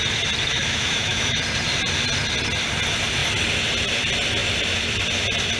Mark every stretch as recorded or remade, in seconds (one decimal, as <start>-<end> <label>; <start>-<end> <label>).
0.0-0.5 recorded; 0.5-1.4 remade; 1.4-5.6 recorded